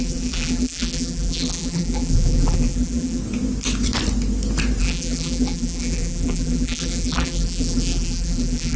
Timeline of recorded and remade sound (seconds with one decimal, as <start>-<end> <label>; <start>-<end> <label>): 0.0-3.2 remade; 3.2-4.8 recorded; 4.8-8.8 remade